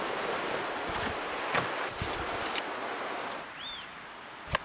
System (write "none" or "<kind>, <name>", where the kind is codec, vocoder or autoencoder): none